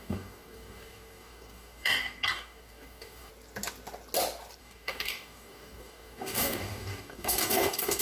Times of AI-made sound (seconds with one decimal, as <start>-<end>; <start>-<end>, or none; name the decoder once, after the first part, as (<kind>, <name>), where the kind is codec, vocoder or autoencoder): 0.0-3.3 (codec, DAC); 4.6-8.0